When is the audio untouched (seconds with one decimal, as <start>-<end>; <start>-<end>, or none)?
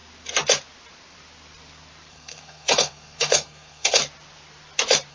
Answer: 0.0-2.1; 4.0-5.1